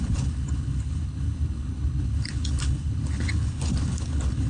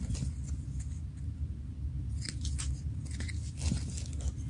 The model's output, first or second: first